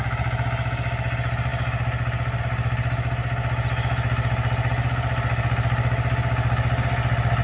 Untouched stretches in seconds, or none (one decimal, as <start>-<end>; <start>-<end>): 0.0-7.4